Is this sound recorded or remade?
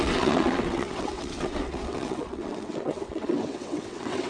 remade